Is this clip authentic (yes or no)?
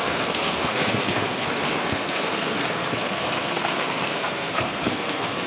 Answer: no